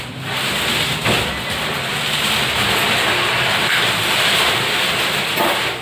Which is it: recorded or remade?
recorded